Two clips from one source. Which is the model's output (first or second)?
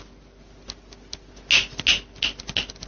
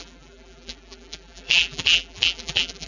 second